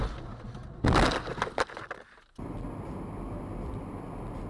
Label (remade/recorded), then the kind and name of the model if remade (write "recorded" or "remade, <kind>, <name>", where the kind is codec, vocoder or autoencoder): recorded